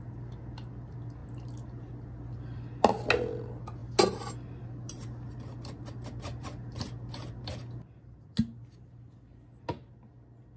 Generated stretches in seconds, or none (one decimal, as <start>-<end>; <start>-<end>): none

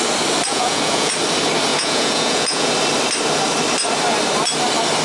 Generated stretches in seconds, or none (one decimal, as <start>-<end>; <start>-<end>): 0.5-1.1; 1.7-2.7

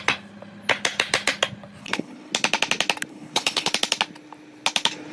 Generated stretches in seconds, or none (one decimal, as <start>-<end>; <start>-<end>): 1.8-2.3; 3.1-3.7

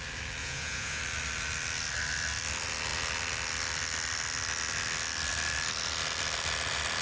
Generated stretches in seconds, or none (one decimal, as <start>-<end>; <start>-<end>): 0.4-1.0

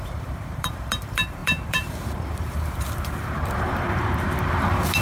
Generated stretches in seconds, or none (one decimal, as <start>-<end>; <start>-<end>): 0.0-5.0

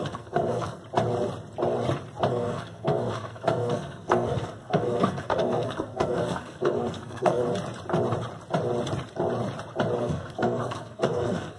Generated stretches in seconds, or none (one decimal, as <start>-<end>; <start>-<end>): 0.0-0.8; 2.3-7.4; 10.0-11.6